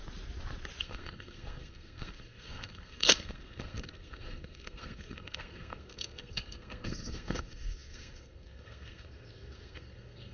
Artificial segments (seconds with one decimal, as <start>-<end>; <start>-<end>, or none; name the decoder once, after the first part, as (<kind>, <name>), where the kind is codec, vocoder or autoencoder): 0.8-10.3 (codec, SNAC)